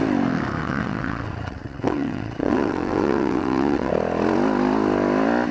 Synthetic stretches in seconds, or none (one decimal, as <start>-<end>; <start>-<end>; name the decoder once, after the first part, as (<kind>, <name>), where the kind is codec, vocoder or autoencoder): 0.6-3.9 (vocoder, WaveNeXt)